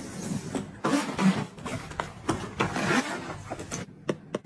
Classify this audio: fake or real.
real